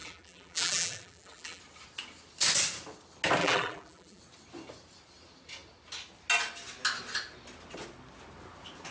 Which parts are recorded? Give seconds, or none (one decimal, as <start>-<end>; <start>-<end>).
1.6-3.4; 4.2-8.9